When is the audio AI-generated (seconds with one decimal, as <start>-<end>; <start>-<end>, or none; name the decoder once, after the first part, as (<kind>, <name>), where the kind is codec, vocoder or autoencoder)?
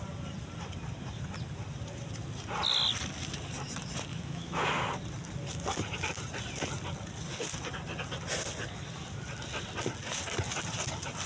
4.1-4.7 (autoencoder, DAC-VAE)